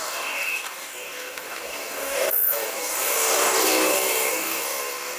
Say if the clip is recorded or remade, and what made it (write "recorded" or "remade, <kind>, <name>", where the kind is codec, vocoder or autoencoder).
remade, codec, DAC